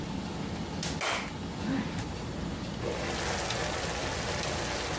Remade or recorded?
recorded